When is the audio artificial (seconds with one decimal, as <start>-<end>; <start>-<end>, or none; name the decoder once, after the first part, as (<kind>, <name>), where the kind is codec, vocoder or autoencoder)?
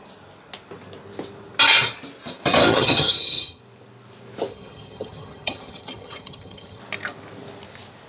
2.7-3.6 (vocoder, HiFi-GAN); 4.5-6.8